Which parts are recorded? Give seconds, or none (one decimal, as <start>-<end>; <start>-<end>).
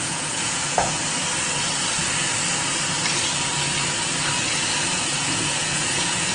1.0-4.8